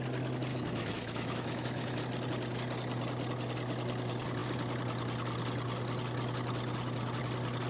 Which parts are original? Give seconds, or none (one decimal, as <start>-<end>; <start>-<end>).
0.0-0.5; 2.0-7.7